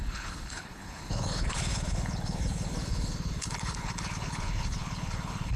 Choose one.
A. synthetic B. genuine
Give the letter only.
A